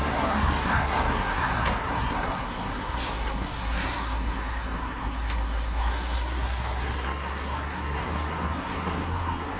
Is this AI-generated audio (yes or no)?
yes